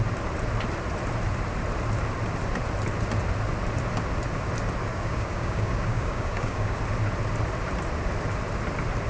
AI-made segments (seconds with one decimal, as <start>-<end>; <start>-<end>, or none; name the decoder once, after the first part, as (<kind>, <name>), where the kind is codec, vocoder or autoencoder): 4.9-6.8 (codec, DAC)